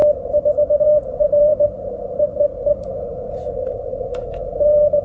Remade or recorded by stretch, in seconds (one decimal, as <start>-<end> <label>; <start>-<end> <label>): 0.0-0.8 recorded; 0.8-5.0 remade